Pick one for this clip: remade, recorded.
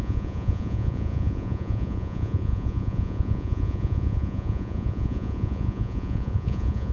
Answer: remade